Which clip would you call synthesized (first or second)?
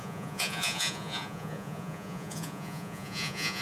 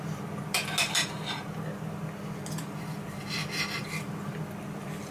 first